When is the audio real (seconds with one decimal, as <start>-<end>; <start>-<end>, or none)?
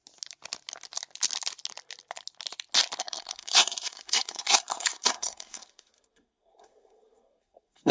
0.0-3.0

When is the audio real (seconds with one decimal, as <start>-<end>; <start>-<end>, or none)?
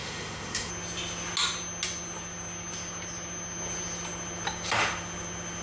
0.7-5.6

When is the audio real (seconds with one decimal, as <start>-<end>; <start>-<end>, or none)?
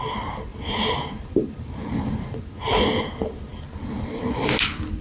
0.0-0.5; 2.4-3.5; 4.4-5.0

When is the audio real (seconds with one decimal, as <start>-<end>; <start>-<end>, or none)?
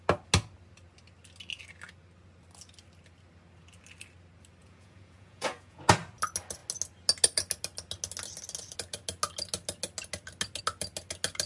0.0-4.6; 5.8-11.5